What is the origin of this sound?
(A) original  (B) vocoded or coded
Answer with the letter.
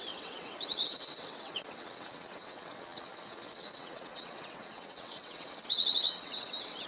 B